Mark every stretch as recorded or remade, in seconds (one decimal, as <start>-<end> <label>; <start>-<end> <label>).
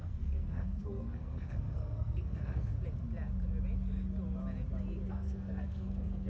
0.0-2.7 remade; 2.7-5.1 recorded; 5.1-6.3 remade